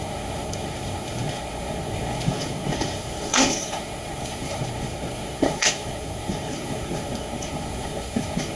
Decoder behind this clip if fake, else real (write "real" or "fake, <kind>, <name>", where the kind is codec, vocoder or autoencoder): fake, codec, SNAC